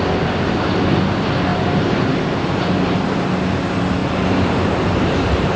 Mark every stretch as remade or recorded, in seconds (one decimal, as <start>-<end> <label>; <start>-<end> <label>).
0.0-1.5 recorded; 1.5-3.2 remade; 3.2-4.0 recorded; 4.0-5.6 remade